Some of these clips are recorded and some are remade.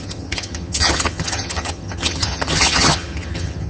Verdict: remade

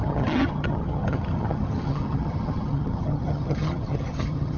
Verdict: remade